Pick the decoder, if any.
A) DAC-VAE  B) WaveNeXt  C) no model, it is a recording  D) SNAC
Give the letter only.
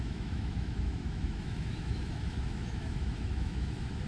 A